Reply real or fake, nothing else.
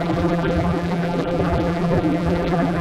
fake